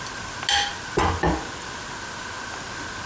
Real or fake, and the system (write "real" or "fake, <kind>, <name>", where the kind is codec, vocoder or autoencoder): real